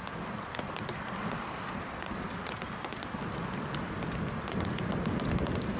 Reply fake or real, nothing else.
real